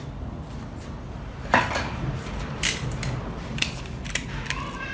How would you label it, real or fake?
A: fake